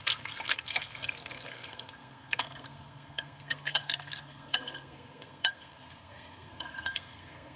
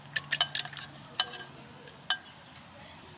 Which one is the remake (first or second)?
first